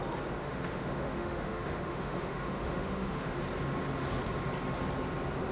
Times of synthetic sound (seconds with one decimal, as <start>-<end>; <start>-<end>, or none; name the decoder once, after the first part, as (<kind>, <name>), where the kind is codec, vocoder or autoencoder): 0.4-3.4 (autoencoder, DAC-VAE)